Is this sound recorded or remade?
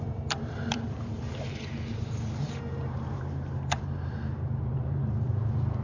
remade